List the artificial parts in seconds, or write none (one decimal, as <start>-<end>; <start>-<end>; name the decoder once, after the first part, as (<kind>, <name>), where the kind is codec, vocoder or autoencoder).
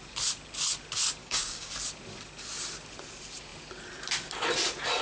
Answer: 1.2-1.7 (codec, DAC)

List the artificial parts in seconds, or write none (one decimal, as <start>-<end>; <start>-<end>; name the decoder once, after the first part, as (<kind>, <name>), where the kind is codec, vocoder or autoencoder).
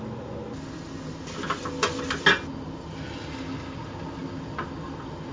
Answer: none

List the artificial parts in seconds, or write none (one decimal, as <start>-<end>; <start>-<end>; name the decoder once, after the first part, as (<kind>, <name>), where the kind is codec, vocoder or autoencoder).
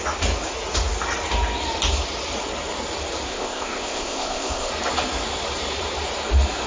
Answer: 3.3-4.7 (codec, ZipCodec)